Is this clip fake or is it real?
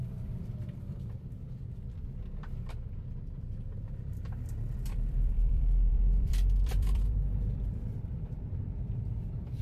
fake